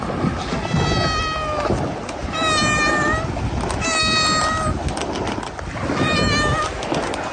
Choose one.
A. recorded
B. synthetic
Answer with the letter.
A